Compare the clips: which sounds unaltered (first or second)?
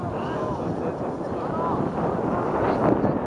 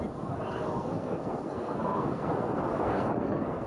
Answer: first